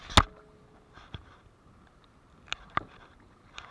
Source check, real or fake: real